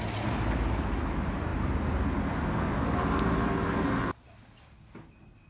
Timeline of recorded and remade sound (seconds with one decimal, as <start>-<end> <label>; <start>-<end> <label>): 0.0-5.5 recorded